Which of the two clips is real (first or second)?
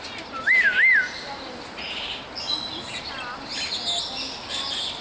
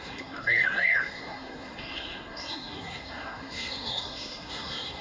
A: first